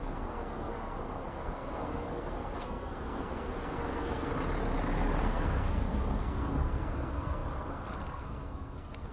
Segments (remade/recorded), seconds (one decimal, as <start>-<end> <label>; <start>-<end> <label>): 0.0-4.3 remade; 4.3-5.2 recorded; 5.2-9.1 remade